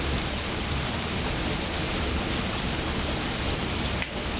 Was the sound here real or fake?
real